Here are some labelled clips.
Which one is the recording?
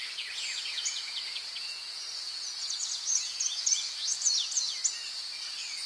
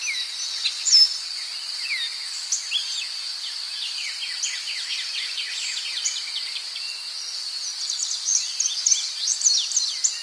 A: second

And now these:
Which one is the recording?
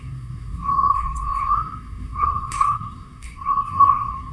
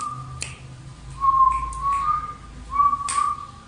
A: second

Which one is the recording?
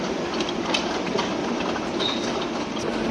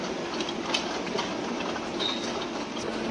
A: second